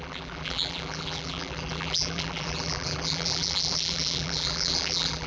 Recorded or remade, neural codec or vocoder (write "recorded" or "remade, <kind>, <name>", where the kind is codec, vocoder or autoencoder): remade, vocoder, BigVGAN v2